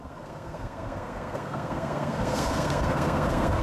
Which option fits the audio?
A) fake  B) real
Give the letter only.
A